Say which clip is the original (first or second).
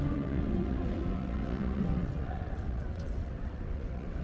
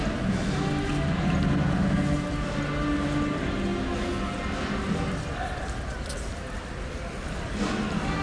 second